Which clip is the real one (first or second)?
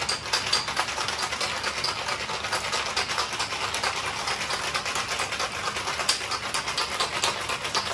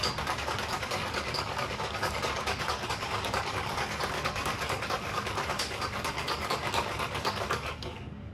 first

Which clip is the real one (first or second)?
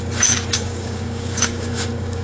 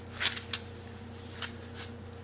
second